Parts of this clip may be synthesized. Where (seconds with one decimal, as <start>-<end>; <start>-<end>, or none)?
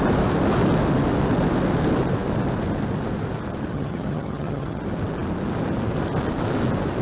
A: 3.7-4.8